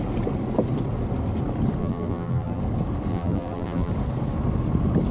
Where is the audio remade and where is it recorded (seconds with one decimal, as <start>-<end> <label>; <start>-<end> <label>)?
0.0-1.8 recorded; 1.8-2.6 remade; 2.6-3.1 recorded; 3.1-3.9 remade; 3.9-5.1 recorded